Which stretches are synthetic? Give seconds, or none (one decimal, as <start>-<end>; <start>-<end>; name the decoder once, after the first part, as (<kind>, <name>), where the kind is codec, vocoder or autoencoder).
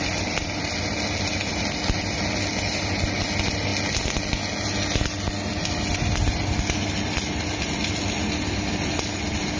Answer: none